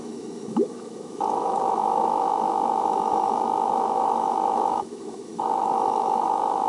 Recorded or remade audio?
remade